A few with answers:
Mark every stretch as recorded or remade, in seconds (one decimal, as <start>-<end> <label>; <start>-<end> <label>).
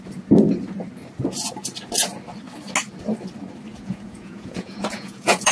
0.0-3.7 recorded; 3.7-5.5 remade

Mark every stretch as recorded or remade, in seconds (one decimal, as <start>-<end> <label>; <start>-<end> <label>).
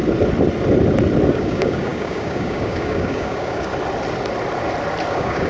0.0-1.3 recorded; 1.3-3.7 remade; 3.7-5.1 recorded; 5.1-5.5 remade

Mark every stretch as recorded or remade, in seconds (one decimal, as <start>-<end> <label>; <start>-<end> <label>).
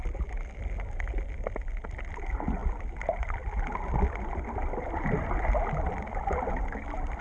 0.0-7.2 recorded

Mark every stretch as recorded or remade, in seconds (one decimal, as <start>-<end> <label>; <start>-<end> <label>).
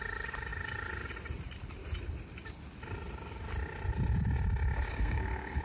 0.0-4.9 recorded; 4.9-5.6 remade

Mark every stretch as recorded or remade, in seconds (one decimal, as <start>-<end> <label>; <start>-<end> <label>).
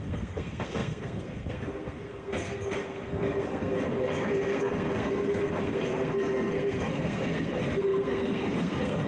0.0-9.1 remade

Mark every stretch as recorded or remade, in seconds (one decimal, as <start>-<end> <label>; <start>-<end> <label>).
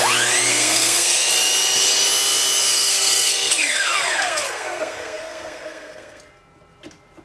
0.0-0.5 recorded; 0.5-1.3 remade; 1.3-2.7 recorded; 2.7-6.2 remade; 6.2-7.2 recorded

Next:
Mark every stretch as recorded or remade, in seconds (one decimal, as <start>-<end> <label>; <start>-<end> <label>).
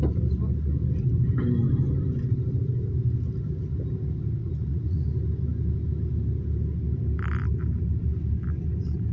0.0-4.4 recorded; 4.4-5.0 remade; 5.0-9.1 recorded